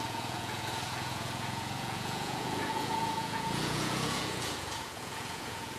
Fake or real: fake